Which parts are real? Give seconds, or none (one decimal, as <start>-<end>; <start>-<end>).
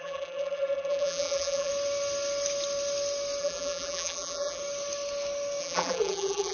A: 1.7-3.4; 4.6-5.6